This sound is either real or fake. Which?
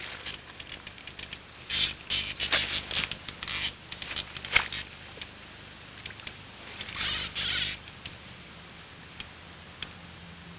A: real